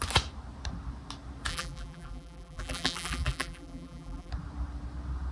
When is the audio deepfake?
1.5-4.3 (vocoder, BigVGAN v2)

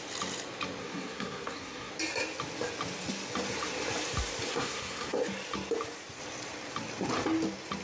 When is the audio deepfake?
0.8-1.9 (codec, SNAC); 4.5-5.2

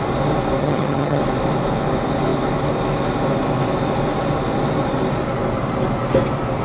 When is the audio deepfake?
0.6-1.2 (vocoder, HiFi-GAN)

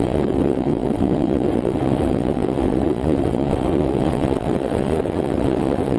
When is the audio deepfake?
0.0-6.0 (vocoder, WaveNeXt)

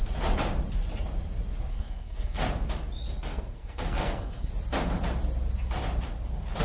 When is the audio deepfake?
1.7-2.4 (codec, SNAC); 3.3-4.5

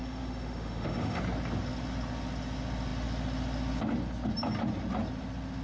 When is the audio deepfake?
0.0-1.2 (autoencoder, DAC-VAE)